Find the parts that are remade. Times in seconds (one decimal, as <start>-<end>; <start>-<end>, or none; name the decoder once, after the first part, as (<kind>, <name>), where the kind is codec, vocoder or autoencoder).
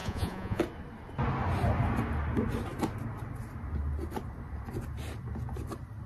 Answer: 0.0-0.6 (vocoder, Vocos)